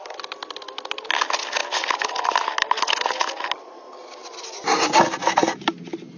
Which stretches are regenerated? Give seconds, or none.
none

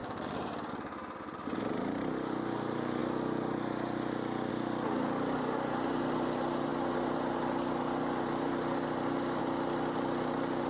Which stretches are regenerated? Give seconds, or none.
none

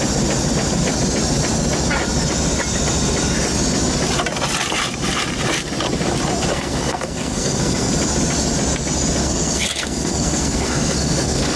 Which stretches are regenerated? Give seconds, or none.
6.5-7.9 (codec, SNAC); 9.2-11.6

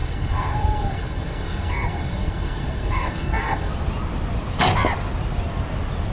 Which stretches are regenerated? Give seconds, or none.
0.0-3.7 (codec, SNAC)

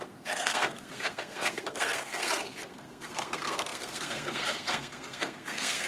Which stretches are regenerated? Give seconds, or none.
0.0-5.9 (codec, SNAC)

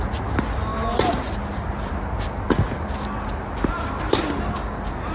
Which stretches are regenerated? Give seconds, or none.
none

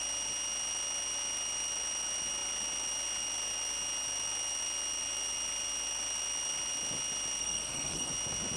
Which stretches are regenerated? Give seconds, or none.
7.4-8.1 (codec, SNAC)

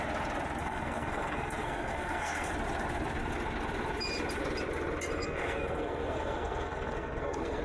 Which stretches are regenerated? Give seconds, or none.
0.6-2.5 (codec, SNAC); 5.2-7.6